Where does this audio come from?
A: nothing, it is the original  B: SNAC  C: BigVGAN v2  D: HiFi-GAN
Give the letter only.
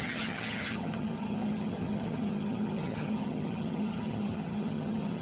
D